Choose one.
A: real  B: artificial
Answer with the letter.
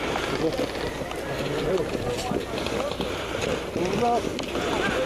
A